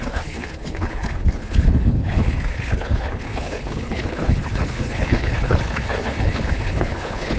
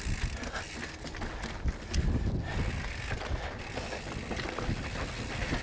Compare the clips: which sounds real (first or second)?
second